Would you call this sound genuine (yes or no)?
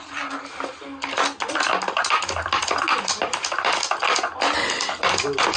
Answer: yes